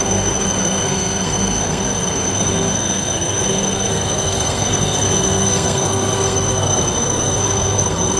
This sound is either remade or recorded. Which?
remade